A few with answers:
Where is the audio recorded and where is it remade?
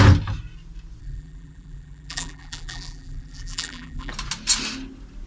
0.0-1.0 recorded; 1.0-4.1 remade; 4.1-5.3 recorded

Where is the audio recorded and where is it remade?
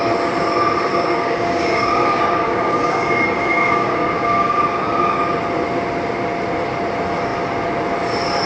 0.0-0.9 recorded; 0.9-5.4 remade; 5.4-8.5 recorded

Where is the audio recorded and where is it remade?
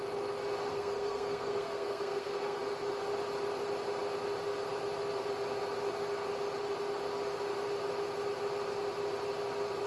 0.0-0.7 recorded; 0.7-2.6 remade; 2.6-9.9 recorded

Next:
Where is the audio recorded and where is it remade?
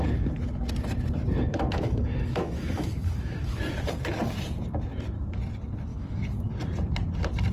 0.0-1.5 recorded; 1.5-3.6 remade; 3.6-5.9 recorded; 5.9-6.5 remade; 6.5-7.5 recorded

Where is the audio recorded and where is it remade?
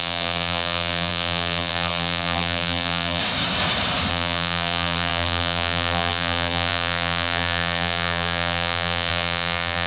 0.0-3.2 remade; 3.2-4.1 recorded; 4.1-9.9 remade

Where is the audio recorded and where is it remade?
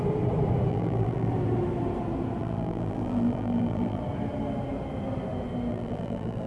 0.0-0.7 recorded; 0.7-1.3 remade; 1.3-2.4 recorded; 2.4-4.0 remade; 4.0-5.7 recorded; 5.7-6.5 remade